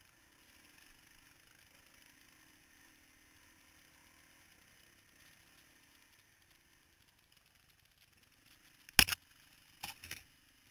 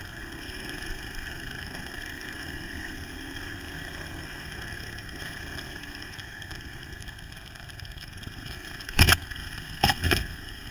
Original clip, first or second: first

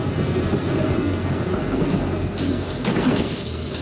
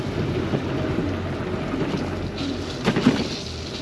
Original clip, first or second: second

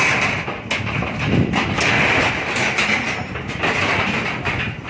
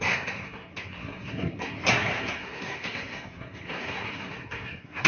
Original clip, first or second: first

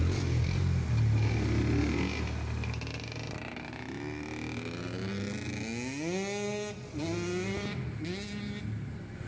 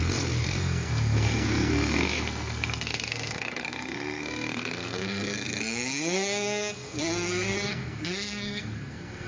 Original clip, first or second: first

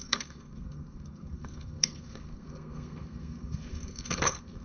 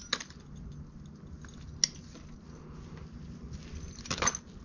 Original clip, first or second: second